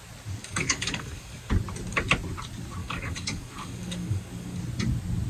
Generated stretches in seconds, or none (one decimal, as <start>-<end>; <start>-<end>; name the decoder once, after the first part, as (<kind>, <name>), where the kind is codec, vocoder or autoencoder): 0.4-1.5 (codec, DAC); 2.8-4.6